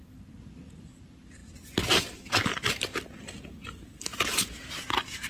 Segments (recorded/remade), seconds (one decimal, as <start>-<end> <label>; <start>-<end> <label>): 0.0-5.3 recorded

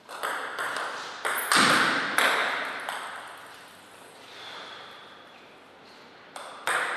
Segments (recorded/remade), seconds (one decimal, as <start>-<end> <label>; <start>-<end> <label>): 0.0-7.0 recorded

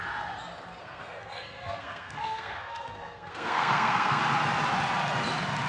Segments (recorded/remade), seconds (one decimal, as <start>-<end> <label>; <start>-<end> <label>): 0.0-0.8 recorded; 0.8-4.2 remade; 4.2-5.7 recorded

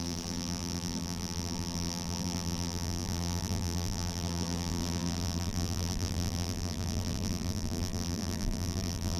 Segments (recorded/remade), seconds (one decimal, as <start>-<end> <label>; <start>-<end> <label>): 0.0-9.2 remade